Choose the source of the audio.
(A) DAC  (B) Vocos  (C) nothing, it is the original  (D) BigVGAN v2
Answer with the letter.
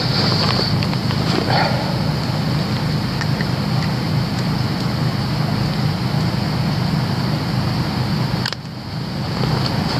C